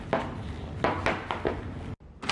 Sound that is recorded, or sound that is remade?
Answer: recorded